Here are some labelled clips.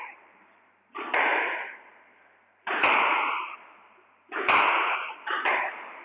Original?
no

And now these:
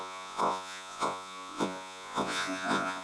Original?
no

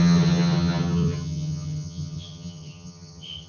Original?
no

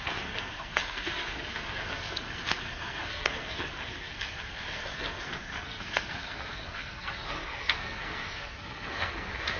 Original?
no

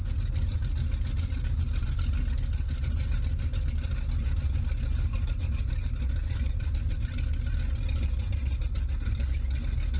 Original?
yes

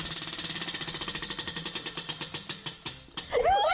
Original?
yes